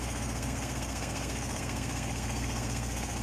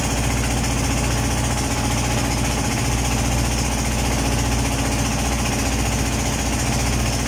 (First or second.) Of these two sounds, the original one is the second